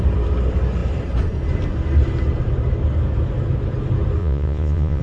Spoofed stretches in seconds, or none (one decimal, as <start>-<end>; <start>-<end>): 4.2-5.0